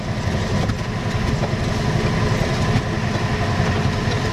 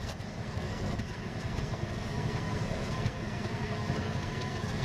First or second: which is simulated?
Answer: second